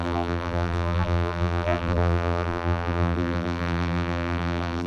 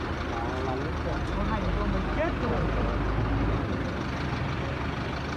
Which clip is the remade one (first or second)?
first